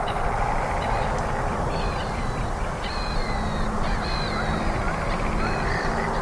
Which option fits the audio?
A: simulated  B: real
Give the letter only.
B